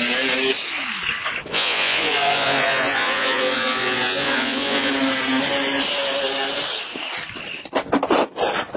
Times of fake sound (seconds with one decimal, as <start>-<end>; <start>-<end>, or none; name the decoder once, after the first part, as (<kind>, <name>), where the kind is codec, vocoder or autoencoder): 1.5-4.9 (vocoder, Vocos)